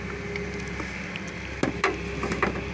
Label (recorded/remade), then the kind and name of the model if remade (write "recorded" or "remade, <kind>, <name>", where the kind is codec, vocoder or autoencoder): recorded